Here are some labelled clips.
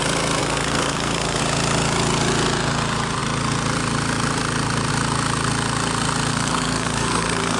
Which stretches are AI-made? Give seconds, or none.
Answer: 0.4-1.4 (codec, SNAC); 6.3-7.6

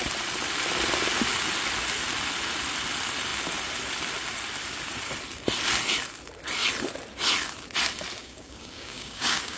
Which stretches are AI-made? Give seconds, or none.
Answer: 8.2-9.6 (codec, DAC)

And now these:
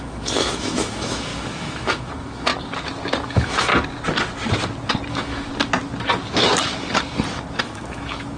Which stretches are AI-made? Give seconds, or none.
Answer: 0.0-2.5 (autoencoder, DAC-VAE); 3.2-3.7; 5.1-5.5; 7.6-8.4

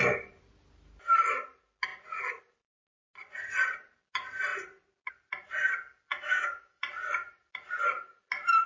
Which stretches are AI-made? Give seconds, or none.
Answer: 6.1-6.8 (autoencoder, DAC-VAE)